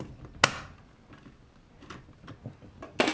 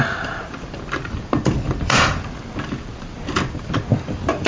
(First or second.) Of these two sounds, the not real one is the second